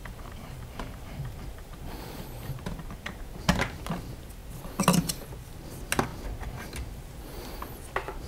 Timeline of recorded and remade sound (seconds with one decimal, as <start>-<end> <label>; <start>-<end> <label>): 0.0-3.2 remade; 3.2-8.3 recorded